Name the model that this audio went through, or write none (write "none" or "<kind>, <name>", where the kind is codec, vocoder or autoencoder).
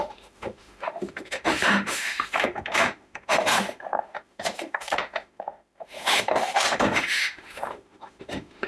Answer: autoencoder, DAC-VAE